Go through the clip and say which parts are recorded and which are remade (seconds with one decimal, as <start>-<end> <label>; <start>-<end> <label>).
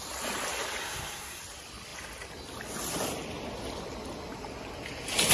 0.0-0.8 recorded; 0.8-1.4 remade; 1.4-5.3 recorded